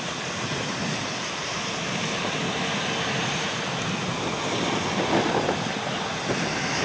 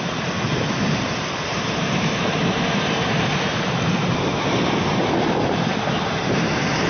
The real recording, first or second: first